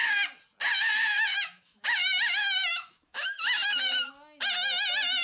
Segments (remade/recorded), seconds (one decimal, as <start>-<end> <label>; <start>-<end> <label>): 0.0-1.3 recorded; 1.3-4.1 remade; 4.1-5.2 recorded